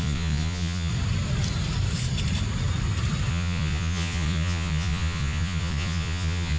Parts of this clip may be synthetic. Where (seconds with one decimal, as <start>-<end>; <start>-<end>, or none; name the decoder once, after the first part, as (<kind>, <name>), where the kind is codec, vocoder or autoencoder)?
0.0-0.9 (vocoder, Vocos); 3.3-6.6